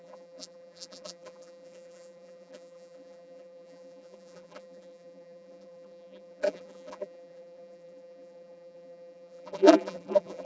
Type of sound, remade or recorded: remade